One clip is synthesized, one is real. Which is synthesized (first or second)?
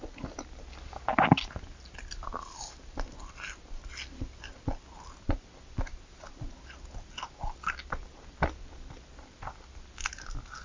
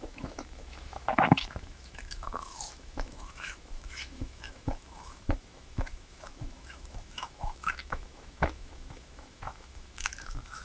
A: second